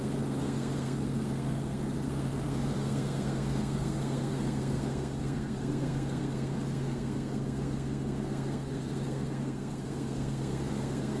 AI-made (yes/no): yes